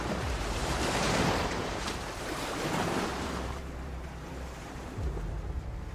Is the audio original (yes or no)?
no